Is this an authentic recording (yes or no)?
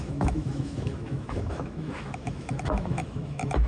no